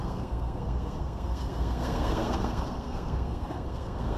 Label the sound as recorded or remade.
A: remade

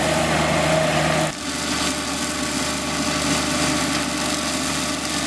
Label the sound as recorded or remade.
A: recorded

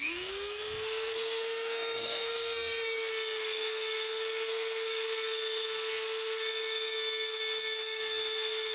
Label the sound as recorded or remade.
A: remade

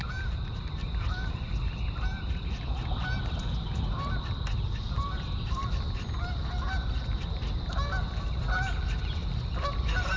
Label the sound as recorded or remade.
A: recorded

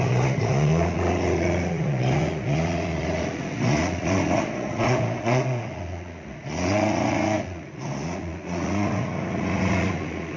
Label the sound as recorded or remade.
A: remade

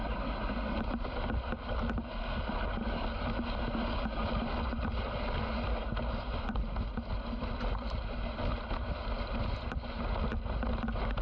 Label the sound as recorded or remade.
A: recorded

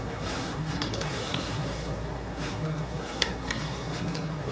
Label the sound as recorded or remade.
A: remade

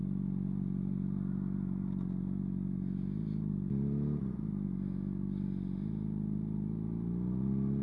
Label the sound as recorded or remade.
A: recorded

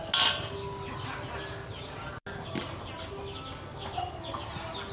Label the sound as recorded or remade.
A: recorded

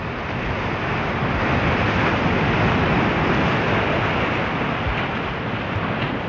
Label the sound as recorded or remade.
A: recorded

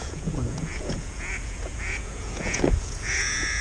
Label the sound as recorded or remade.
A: remade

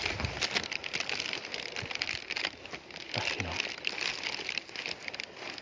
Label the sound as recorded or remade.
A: recorded